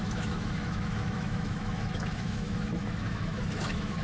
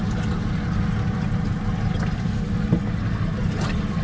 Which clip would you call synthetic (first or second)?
first